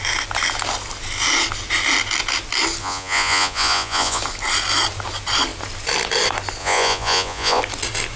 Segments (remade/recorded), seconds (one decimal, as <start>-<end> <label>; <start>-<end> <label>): 0.0-2.8 recorded; 2.8-4.2 remade; 4.2-6.6 recorded; 6.6-7.6 remade; 7.6-8.2 recorded